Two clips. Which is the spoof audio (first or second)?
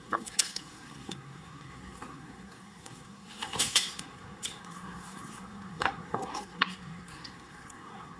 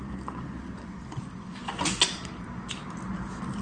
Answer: first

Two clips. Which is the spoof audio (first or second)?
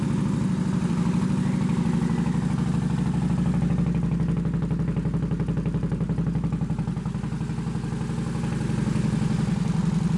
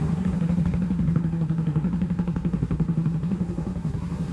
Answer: second